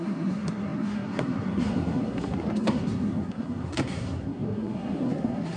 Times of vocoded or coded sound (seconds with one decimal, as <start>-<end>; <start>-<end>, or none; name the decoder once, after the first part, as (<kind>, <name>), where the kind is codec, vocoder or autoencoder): 0.0-5.6 (codec, SNAC)

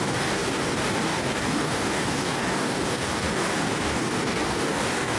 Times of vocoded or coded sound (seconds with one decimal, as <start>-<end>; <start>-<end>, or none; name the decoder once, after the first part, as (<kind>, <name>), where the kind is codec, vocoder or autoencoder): 0.0-5.2 (codec, DAC)

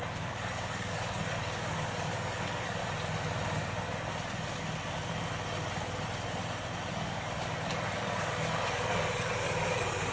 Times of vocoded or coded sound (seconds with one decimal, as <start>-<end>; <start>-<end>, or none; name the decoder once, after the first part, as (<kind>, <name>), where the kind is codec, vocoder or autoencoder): 0.0-2.8 (codec, DAC); 6.9-10.1